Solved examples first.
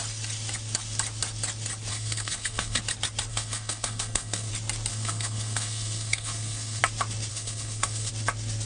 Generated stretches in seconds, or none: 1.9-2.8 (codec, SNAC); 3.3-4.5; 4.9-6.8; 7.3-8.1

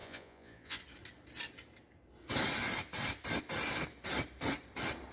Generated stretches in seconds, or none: 0.0-0.8 (vocoder, Vocos)

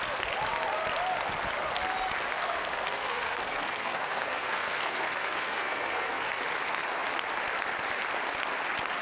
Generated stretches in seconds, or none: 2.4-6.4 (codec, SNAC)

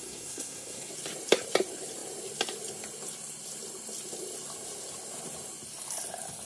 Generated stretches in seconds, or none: 0.0-0.9 (codec, SNAC)

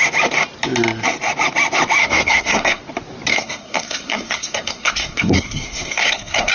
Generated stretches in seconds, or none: 2.0-2.8 (codec, SNAC); 3.3-6.5

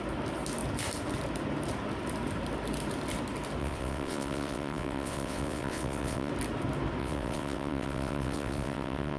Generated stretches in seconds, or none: 3.6-6.3 (vocoder, WaveNeXt); 7.0-9.2